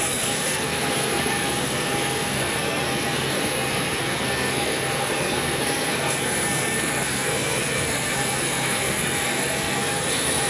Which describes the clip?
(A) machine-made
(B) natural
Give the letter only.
A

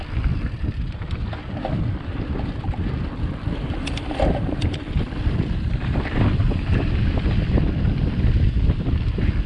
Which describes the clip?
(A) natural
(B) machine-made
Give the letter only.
B